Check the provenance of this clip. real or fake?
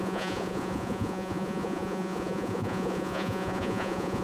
fake